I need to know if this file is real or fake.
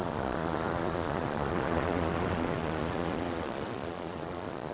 fake